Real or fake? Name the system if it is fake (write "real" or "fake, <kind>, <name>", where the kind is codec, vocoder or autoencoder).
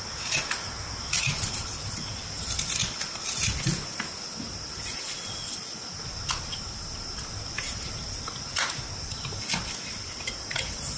real